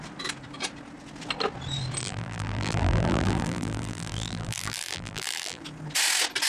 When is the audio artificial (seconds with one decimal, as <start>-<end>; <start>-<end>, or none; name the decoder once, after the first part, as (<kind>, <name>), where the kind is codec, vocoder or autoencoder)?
2.0-5.6 (vocoder, BigVGAN v2)